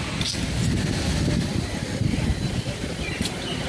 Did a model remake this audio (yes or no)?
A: no